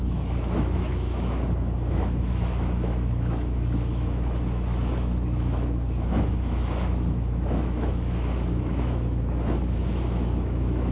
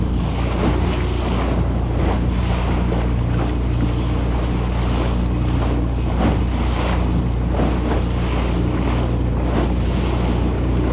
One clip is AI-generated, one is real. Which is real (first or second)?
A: second